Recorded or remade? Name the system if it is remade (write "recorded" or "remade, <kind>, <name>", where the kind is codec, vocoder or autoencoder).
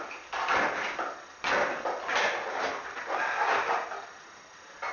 recorded